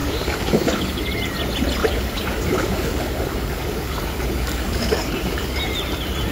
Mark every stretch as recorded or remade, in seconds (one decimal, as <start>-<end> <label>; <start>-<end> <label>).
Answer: 0.0-1.1 remade; 1.1-1.8 recorded; 1.8-5.6 remade; 5.6-6.3 recorded